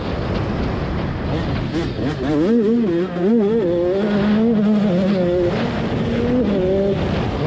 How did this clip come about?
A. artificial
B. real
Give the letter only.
B